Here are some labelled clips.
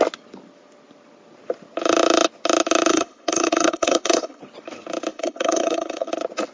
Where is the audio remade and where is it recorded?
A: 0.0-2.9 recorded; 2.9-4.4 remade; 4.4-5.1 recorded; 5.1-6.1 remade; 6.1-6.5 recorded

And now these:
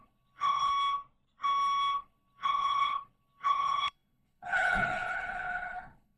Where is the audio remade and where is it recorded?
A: 0.0-0.7 remade; 0.7-2.0 recorded; 2.0-6.2 remade